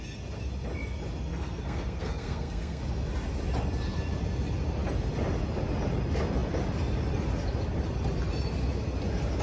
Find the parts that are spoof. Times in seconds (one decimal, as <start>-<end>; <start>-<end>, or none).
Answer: 1.3-2.8

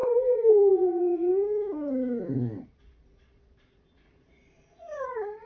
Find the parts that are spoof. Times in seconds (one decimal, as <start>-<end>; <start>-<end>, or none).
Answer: 0.0-1.3; 2.6-5.5

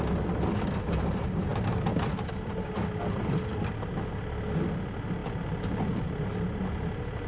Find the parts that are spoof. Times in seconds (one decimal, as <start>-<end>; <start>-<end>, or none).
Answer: none

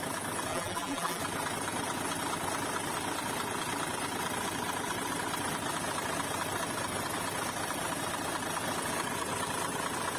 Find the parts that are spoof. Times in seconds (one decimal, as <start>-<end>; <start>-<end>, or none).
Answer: 0.5-1.2

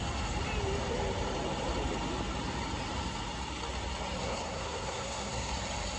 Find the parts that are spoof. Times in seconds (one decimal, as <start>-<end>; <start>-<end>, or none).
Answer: 4.2-5.5

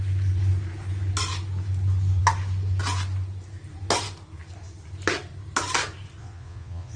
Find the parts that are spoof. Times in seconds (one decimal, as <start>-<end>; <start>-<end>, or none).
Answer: 6.2-7.0

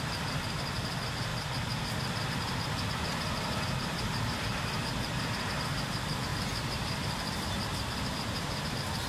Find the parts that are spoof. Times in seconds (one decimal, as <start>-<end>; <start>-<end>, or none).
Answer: 0.0-1.3; 2.9-6.3; 7.3-9.1

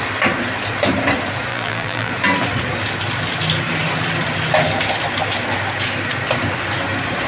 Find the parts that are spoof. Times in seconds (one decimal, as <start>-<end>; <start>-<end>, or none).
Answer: 1.5-2.1